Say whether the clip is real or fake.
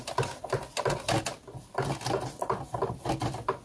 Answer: real